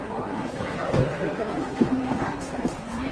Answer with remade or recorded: remade